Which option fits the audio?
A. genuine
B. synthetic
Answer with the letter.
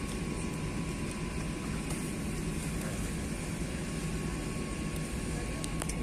A